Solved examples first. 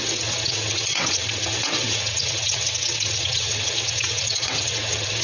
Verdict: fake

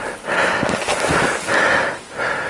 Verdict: real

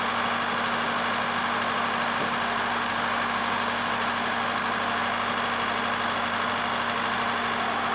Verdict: real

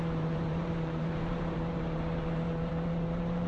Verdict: fake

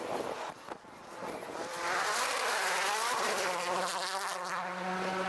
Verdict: real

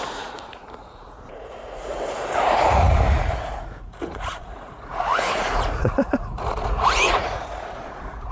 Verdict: fake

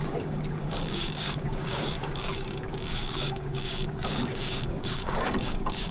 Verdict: fake